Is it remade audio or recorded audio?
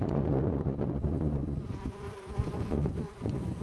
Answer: remade